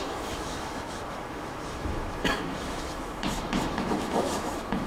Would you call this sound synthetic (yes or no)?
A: yes